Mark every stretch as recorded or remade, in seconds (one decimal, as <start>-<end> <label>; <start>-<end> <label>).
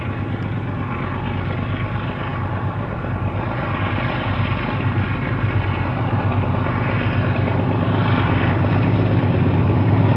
0.0-10.2 recorded